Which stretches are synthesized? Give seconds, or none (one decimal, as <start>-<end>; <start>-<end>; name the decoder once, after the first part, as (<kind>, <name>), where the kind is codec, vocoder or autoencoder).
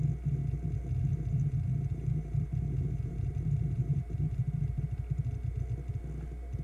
1.1-4.8 (vocoder, BigVGAN v2)